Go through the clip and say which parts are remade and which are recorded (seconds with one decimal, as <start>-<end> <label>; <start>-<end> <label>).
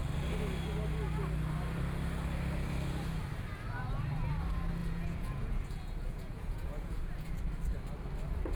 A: 0.0-4.8 recorded; 4.8-7.3 remade; 7.3-8.6 recorded